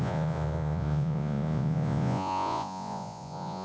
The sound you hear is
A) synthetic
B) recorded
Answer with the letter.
A